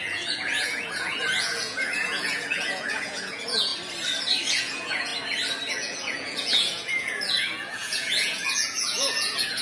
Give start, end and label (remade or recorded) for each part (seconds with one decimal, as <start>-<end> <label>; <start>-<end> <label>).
0.0-3.7 remade; 3.7-4.5 recorded; 4.5-5.1 remade; 5.1-5.7 recorded; 5.7-9.6 remade